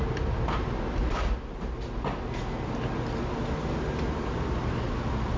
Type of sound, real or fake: real